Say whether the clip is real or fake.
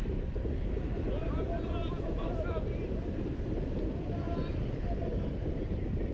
real